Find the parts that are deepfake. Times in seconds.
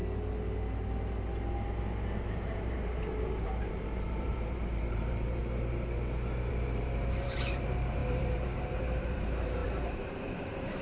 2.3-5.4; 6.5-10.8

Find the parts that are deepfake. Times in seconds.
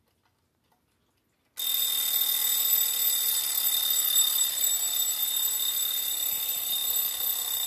3.4-4.7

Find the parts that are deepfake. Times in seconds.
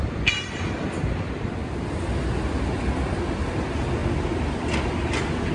4.0-5.1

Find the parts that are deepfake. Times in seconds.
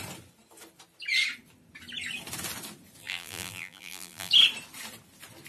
3.0-4.3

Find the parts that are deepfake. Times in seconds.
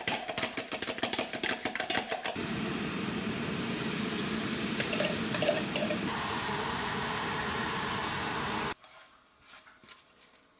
0.0-8.0; 8.9-10.6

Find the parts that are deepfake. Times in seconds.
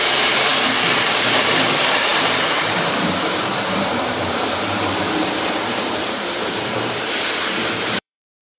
0.0-8.6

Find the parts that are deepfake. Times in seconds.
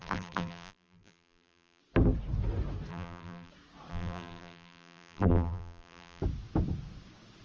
0.0-1.8; 2.9-3.5; 3.9-6.2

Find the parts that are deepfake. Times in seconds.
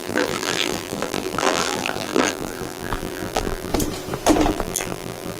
0.0-3.7; 4.5-5.4